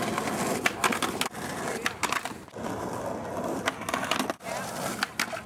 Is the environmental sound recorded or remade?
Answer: recorded